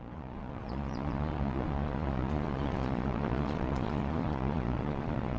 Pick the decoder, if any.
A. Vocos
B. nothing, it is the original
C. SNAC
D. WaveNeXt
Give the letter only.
A